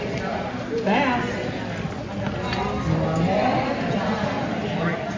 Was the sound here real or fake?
real